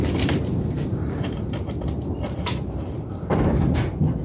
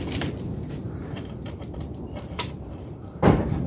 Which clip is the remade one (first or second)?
second